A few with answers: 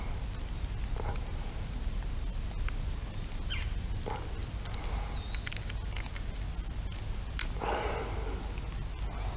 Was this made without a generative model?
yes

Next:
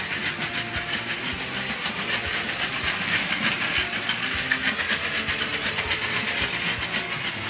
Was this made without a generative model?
yes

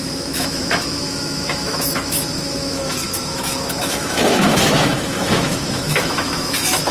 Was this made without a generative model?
no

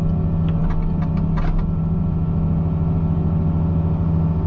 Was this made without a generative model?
yes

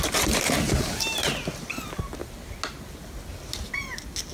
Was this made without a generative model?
yes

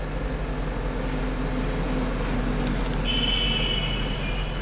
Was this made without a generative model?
yes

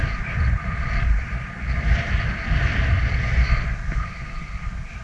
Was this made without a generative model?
yes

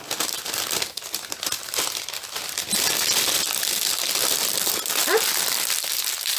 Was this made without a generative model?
yes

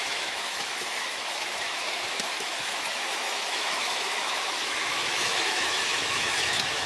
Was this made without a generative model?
no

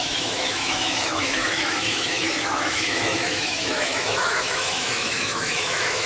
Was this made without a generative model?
no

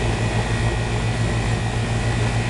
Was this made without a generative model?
yes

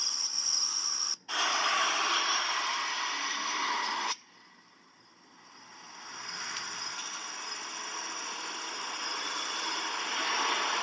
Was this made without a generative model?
yes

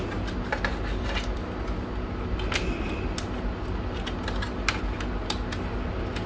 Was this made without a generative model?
yes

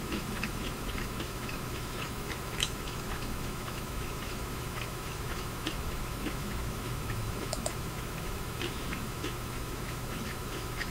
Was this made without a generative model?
no